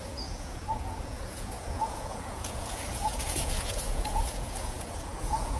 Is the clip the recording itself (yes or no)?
no